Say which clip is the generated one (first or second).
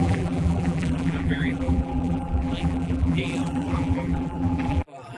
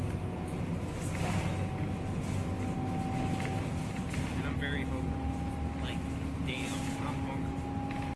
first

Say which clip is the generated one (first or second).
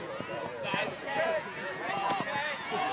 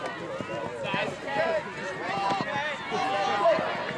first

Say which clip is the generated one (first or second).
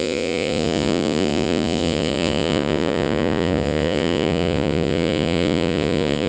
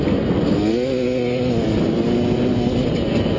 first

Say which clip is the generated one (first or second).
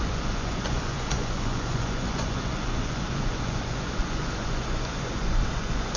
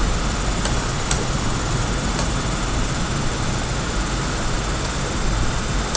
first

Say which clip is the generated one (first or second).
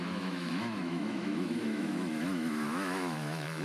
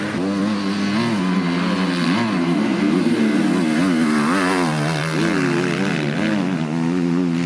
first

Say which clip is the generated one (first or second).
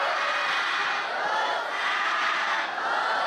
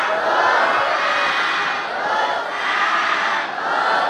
first